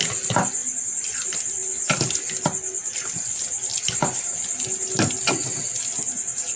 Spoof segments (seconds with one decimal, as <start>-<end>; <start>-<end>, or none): none